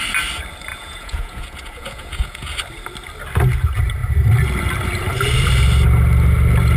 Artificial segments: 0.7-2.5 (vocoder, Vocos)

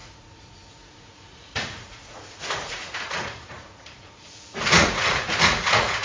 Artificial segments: 0.0-6.0 (vocoder, Vocos)

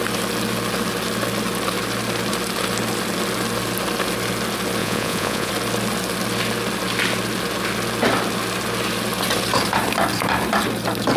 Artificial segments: 4.8-5.5 (vocoder, Vocos)

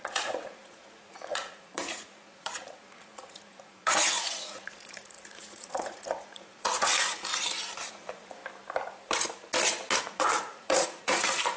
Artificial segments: 0.0-7.3 (vocoder, Vocos); 7.9-8.4; 10.0-11.6